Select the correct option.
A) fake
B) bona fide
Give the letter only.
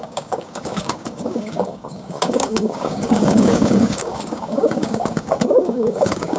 A